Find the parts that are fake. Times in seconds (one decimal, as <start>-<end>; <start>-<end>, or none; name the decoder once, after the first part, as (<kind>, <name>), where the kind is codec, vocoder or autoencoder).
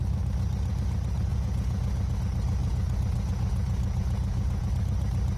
1.3-2.2 (vocoder, Vocos); 2.6-4.7